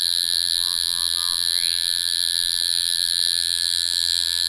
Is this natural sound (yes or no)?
no